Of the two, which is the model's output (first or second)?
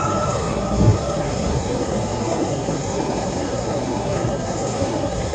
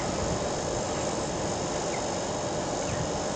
first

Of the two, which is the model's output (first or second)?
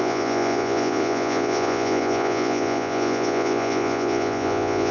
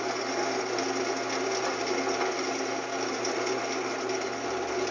first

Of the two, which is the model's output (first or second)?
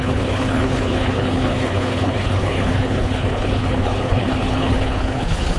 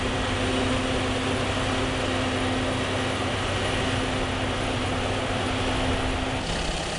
first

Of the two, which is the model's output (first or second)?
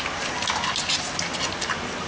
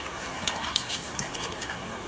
second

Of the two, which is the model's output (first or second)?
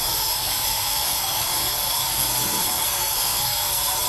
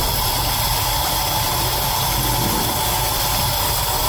first